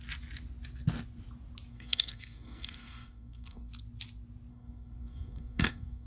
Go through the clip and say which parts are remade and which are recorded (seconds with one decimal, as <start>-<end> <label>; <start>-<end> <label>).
0.0-1.7 recorded; 1.7-3.7 remade; 3.7-4.5 recorded; 4.5-6.1 remade